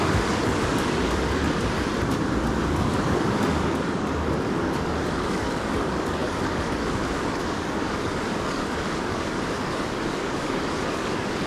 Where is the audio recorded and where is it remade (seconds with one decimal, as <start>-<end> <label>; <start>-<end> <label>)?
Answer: 0.0-1.9 remade; 1.9-2.6 recorded; 2.6-11.5 remade